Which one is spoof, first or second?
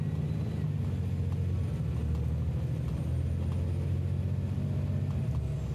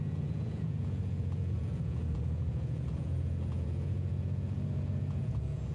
second